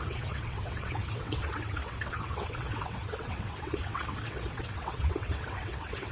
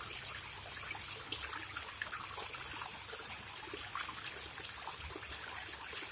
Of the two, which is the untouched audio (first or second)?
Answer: second